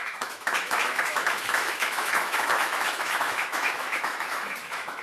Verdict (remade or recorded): remade